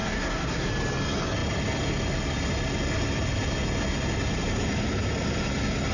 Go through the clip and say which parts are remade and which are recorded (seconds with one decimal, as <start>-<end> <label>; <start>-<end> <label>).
0.0-0.7 remade; 0.7-5.9 recorded

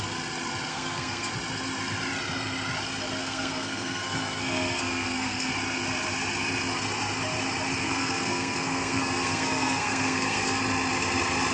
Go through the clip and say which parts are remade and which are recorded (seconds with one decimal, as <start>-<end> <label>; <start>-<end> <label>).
0.0-0.7 recorded; 0.7-1.3 remade; 1.3-3.2 recorded; 3.2-5.5 remade; 5.5-7.8 recorded; 7.8-10.6 remade; 10.6-11.5 recorded

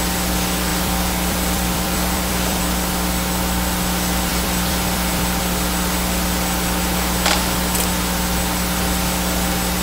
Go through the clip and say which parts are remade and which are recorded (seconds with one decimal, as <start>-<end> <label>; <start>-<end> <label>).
0.0-0.7 recorded; 0.7-2.6 remade; 2.6-4.3 recorded; 4.3-5.4 remade; 5.4-9.8 recorded

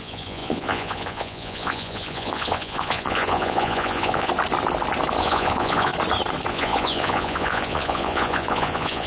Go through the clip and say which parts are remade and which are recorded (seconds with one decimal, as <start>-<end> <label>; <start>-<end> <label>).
0.0-4.3 remade; 4.3-5.2 recorded; 5.2-5.9 remade; 5.9-6.5 recorded; 6.5-9.1 remade